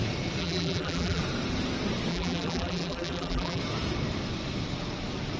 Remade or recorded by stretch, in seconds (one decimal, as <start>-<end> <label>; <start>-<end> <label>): 0.0-0.4 recorded; 0.4-1.2 remade; 1.2-2.1 recorded; 2.1-3.6 remade; 3.6-5.4 recorded